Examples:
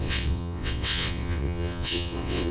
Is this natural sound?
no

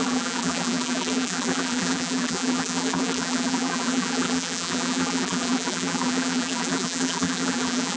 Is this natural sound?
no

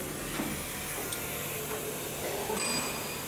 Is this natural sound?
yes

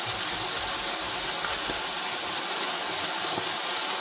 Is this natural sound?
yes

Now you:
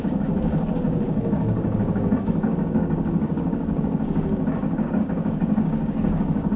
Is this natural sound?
no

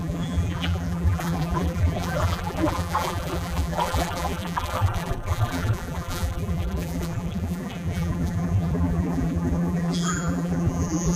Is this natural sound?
no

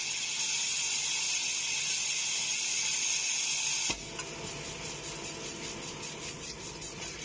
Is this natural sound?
yes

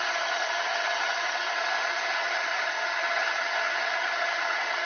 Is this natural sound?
no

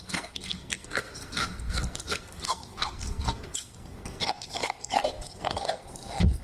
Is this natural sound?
no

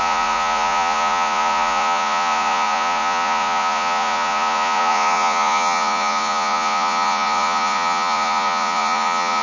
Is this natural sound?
no